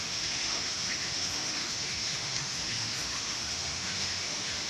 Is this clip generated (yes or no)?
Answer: yes